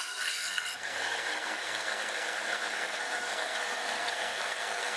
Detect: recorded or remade remade